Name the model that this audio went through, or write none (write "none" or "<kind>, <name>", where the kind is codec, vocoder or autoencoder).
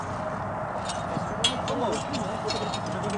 none